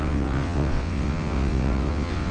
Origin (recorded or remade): remade